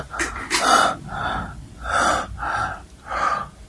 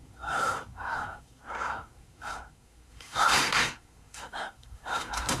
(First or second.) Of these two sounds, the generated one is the second